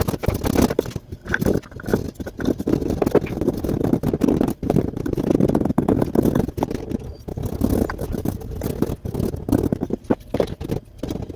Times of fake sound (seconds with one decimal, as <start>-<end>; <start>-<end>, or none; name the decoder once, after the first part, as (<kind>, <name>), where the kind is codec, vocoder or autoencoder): none

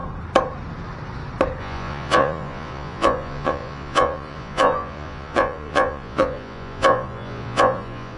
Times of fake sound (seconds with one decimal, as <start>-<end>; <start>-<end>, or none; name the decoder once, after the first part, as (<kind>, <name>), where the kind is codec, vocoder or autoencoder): 1.6-8.2 (vocoder, Vocos)